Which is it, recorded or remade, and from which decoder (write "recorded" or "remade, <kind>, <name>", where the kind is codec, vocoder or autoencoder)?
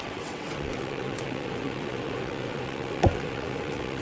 remade, vocoder, WaveNeXt